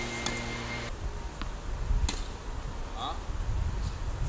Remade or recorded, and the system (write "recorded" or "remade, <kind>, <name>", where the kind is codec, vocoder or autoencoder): recorded